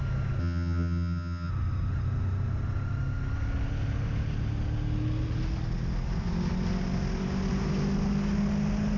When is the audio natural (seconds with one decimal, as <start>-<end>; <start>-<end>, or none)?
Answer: 0.0-0.4; 1.5-9.0